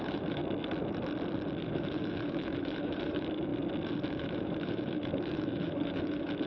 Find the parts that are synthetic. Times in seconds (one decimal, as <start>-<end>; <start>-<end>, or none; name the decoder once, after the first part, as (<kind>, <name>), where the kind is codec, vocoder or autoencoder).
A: 0.0-0.4 (autoencoder, DAC-VAE); 1.6-3.5; 4.1-6.5